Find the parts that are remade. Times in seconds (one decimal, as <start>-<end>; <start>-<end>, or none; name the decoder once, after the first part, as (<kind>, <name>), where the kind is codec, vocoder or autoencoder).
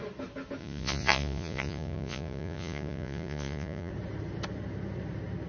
0.6-3.9 (vocoder, Vocos)